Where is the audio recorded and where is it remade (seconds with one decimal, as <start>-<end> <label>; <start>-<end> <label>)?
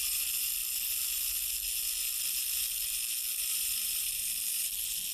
0.0-3.5 recorded; 3.5-4.2 remade; 4.2-5.1 recorded